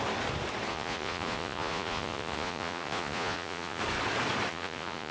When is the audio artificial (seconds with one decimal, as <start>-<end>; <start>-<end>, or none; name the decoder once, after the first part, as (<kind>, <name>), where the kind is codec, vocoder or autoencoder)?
0.7-3.8 (vocoder, Vocos); 4.5-5.1